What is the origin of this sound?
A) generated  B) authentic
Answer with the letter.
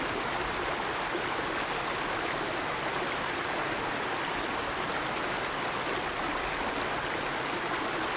B